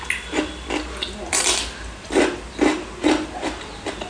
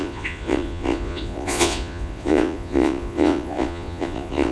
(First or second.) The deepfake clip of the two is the second